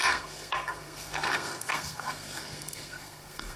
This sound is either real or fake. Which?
fake